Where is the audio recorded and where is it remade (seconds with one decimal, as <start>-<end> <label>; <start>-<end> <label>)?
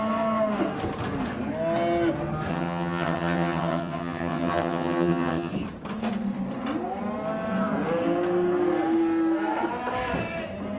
0.0-2.5 recorded; 2.5-5.5 remade; 5.5-10.8 recorded